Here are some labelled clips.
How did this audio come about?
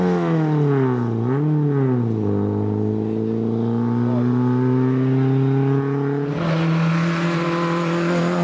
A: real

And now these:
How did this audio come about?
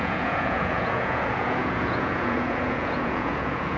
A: fake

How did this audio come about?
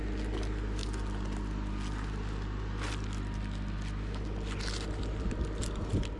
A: real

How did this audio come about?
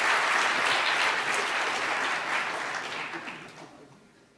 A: real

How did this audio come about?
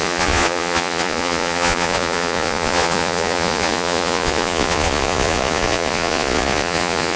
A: fake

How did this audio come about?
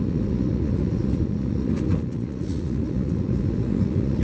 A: fake